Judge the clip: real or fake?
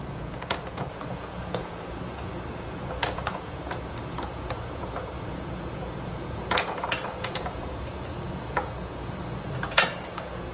fake